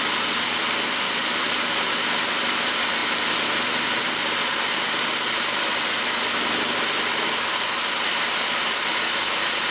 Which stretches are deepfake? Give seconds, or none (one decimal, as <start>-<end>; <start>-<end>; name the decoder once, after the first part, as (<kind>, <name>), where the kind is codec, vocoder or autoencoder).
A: none